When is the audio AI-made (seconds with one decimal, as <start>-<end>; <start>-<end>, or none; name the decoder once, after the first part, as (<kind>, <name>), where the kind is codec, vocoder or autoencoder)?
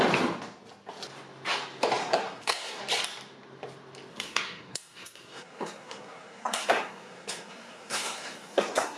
2.0-2.8 (codec, SNAC); 4.1-9.0